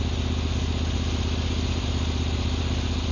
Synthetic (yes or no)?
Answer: no